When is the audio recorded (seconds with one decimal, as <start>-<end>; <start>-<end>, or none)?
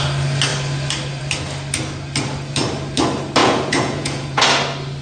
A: 0.0-3.4; 4.4-5.0